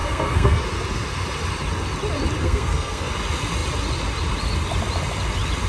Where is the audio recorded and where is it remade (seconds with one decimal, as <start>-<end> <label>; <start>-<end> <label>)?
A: 0.0-0.6 remade; 0.6-2.4 recorded; 2.4-3.1 remade; 3.1-5.7 recorded